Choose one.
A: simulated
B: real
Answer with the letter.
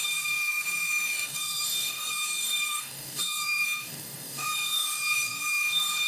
A